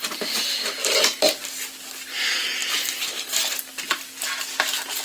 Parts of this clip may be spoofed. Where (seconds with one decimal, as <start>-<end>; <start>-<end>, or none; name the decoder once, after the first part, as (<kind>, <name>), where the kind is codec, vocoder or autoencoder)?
none